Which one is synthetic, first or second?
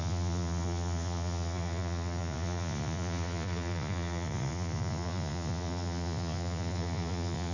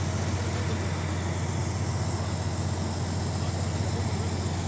first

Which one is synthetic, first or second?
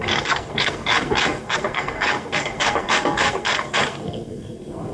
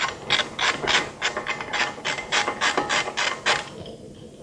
first